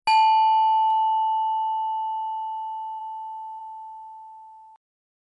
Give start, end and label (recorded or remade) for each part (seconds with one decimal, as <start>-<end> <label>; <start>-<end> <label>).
0.0-5.3 recorded